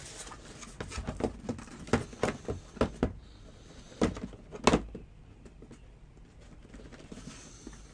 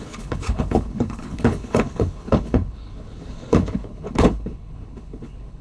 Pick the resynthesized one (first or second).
second